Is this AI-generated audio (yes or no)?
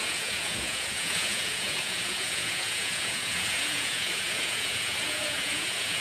yes